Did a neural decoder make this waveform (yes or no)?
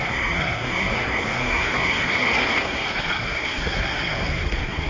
yes